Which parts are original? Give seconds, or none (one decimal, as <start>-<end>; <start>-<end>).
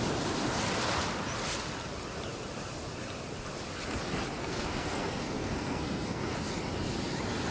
0.0-4.4; 6.5-7.5